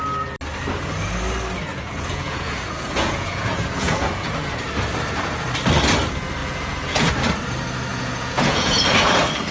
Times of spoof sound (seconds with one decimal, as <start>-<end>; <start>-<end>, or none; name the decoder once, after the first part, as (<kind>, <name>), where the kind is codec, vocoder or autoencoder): 1.7-4.3 (vocoder, Vocos); 6.4-7.1; 7.9-8.8